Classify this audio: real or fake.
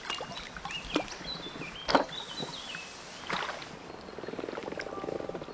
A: real